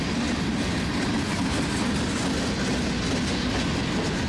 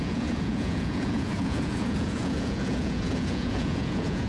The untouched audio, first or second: first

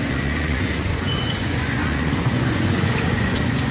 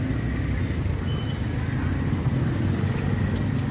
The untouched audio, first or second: second